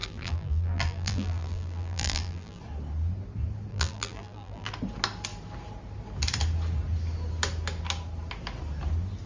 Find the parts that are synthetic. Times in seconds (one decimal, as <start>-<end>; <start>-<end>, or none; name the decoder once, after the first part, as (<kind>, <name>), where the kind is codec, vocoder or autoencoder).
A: 0.0-2.6 (vocoder, BigVGAN v2); 3.7-4.7